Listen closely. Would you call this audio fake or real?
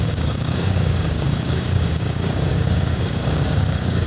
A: fake